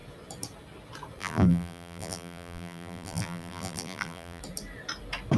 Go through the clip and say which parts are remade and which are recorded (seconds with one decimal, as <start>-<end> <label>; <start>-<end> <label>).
0.0-1.2 recorded; 1.2-4.4 remade; 4.4-5.4 recorded